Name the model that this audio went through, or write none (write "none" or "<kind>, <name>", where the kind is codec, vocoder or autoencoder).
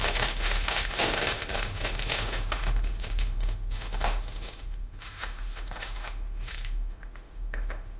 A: autoencoder, DAC-VAE